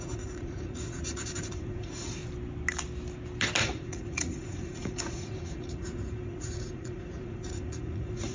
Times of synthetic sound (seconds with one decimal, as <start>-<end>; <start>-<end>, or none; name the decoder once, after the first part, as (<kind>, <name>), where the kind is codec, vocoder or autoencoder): 0.0-2.2 (vocoder, Vocos); 3.6-8.3